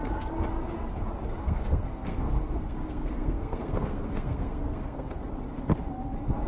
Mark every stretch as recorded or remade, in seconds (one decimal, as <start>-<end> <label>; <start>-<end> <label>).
0.0-1.4 recorded; 1.4-5.3 remade; 5.3-6.5 recorded